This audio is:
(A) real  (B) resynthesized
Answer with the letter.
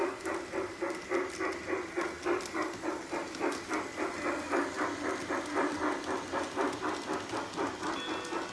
A